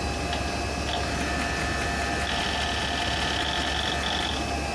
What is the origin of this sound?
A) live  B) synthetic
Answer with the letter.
A